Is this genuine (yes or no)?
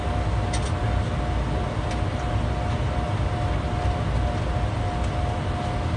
yes